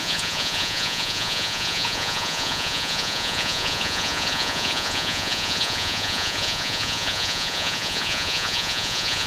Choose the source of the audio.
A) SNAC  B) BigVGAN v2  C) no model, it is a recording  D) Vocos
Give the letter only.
D